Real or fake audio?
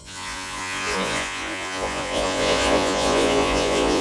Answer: fake